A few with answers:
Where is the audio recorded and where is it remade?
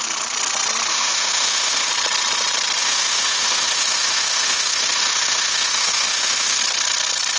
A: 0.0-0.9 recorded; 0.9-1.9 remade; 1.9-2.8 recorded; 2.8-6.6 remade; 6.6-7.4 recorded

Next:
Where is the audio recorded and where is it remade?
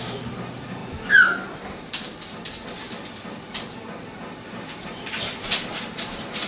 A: 0.0-6.5 recorded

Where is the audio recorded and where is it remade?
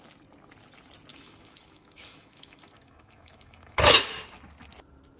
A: 0.0-1.1 recorded; 1.1-4.2 remade; 4.2-5.2 recorded